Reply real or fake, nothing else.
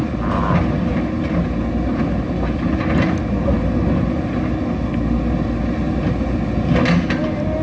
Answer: real